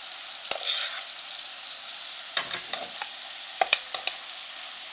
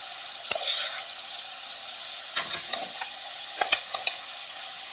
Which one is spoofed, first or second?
second